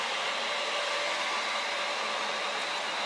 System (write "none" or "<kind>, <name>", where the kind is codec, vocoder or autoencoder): none